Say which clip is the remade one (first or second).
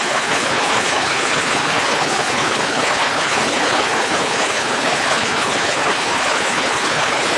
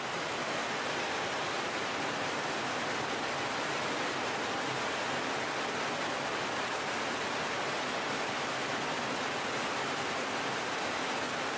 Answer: first